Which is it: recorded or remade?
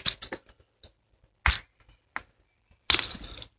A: recorded